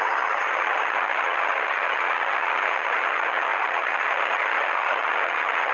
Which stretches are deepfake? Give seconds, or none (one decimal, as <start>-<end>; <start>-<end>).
0.0-5.7